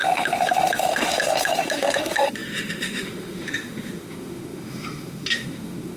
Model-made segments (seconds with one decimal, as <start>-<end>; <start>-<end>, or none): 0.0-6.0